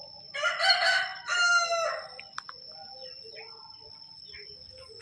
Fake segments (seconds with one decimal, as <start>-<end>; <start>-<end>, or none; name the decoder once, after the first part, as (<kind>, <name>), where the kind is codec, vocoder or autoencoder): none